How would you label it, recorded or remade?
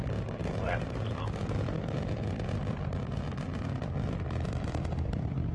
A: remade